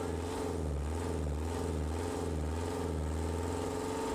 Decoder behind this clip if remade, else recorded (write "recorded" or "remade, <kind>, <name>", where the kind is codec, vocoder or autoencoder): recorded